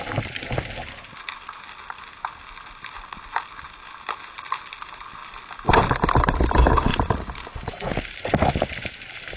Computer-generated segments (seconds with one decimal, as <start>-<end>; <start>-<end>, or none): 6.9-7.9